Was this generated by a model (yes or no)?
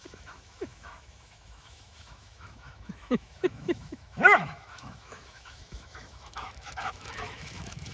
yes